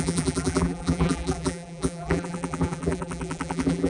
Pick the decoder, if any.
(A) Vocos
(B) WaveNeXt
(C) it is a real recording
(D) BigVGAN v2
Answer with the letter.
D